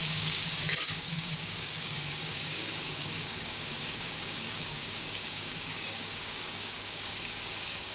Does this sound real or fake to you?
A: fake